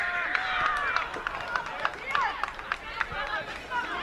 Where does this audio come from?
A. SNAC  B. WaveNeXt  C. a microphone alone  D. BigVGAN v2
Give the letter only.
C